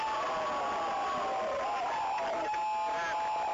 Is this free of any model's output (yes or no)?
yes